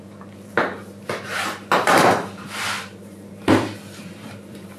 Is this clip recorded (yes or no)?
no